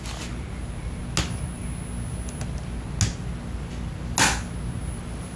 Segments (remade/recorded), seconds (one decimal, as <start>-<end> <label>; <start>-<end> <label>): 0.0-5.4 recorded

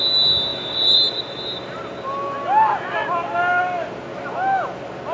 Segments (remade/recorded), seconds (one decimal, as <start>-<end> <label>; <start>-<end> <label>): 0.0-5.1 recorded

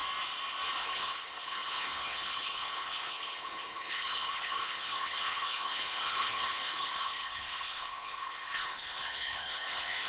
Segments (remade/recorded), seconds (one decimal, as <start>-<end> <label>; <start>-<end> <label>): 0.0-0.8 recorded; 0.8-10.1 remade

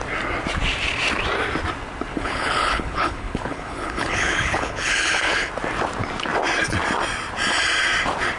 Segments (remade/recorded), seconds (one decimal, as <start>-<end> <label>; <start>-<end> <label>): 0.0-2.1 recorded; 2.1-5.5 remade; 5.5-8.4 recorded

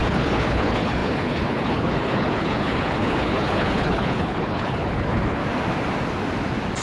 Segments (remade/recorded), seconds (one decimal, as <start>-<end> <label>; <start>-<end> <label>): 0.0-5.4 remade; 5.4-6.8 recorded